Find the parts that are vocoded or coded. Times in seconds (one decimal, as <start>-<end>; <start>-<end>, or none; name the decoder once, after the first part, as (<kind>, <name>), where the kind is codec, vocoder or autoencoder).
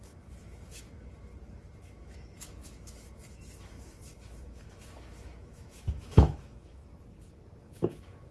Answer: 0.0-1.3 (autoencoder, DAC-VAE); 1.8-6.8; 7.6-8.3